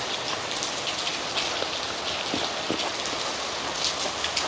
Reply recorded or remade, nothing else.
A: recorded